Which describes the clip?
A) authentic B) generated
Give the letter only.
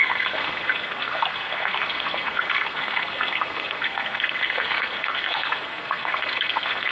B